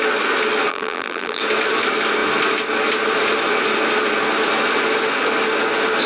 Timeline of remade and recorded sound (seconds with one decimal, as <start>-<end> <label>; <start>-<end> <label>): 0.0-0.7 recorded; 0.7-1.4 remade; 1.4-6.1 recorded